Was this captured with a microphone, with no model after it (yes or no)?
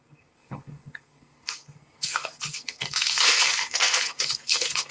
no